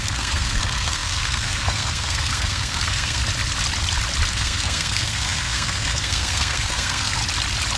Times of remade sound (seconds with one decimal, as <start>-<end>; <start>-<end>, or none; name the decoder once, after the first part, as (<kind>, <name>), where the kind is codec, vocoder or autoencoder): 0.0-3.2 (codec, SNAC); 4.3-7.2